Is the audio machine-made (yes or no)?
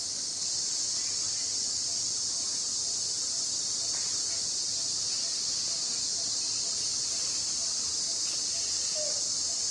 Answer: no